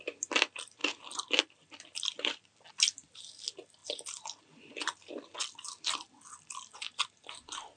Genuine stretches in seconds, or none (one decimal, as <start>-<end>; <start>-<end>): 0.0-7.8